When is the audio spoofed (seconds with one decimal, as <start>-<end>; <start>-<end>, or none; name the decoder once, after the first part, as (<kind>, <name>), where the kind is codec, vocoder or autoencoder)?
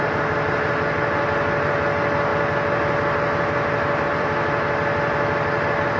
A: 0.0-6.0 (vocoder, BigVGAN v2)